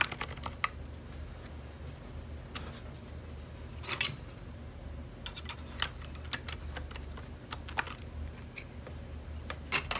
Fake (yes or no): no